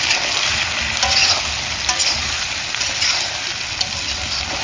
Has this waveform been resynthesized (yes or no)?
no